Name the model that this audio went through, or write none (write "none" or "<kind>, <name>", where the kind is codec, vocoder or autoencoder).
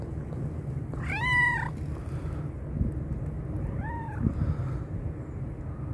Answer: none